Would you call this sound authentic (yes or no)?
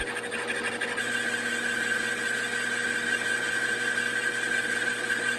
yes